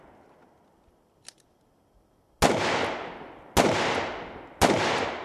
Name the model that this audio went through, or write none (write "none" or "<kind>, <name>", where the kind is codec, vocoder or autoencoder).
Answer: none